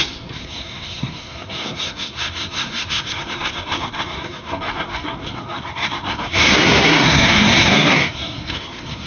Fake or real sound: fake